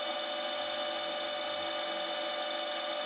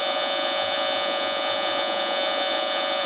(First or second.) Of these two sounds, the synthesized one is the second